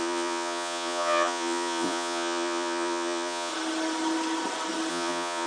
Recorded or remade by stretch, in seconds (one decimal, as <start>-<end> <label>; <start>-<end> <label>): 0.0-3.5 remade; 3.5-4.9 recorded; 4.9-5.5 remade